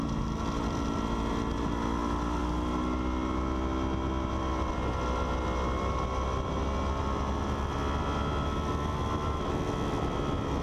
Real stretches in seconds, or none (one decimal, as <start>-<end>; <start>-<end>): 0.0-10.6